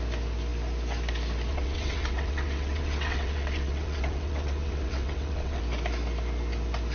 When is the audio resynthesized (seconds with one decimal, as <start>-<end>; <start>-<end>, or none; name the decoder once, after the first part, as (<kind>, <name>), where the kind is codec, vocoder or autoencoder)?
1.5-5.6 (vocoder, WaveNeXt)